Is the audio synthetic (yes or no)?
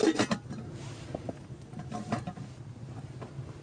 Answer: no